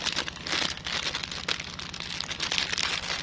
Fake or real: real